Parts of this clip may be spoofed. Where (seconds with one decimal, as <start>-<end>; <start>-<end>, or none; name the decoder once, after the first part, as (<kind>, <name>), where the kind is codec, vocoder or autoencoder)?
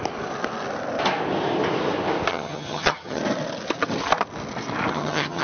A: 2.3-3.2 (vocoder, HiFi-GAN); 4.9-5.4